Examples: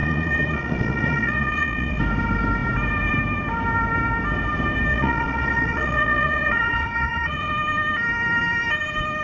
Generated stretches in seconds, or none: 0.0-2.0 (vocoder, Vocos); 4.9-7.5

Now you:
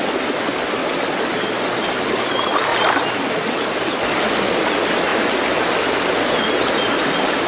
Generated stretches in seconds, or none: none

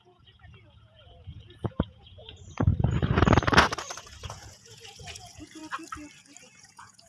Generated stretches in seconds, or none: 0.0-2.7 (vocoder, Vocos); 4.0-5.6; 6.4-7.1

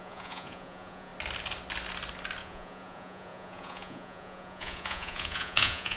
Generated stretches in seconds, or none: 0.0-1.1 (vocoder, Vocos); 2.4-6.0

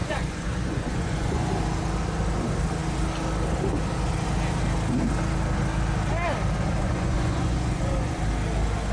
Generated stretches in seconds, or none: 0.0-1.5 (vocoder, Vocos); 6.8-8.2

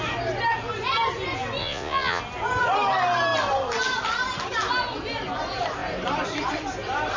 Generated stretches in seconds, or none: 1.6-2.2 (vocoder, Vocos)

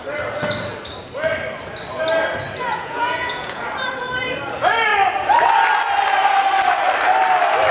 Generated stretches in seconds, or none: 2.7-3.6 (vocoder, Vocos)